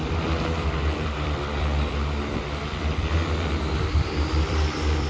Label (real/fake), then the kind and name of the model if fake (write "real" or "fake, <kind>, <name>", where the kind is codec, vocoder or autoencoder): fake, vocoder, BigVGAN v2